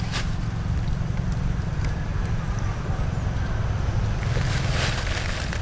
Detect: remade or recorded recorded